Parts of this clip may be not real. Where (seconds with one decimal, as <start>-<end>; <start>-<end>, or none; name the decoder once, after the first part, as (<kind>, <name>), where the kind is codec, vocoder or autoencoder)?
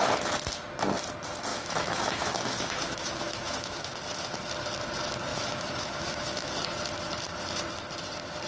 1.5-3.9 (autoencoder, DAC-VAE); 5.3-6.5